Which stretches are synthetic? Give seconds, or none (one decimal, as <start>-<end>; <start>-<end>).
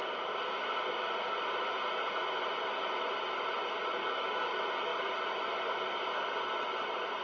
4.0-4.5